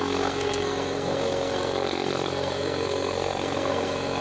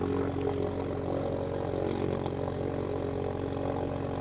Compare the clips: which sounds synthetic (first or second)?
first